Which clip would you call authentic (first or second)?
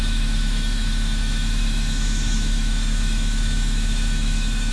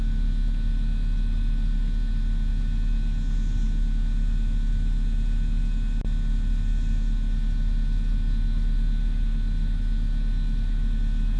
second